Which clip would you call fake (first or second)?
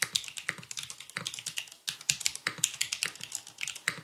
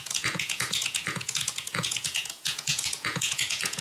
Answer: second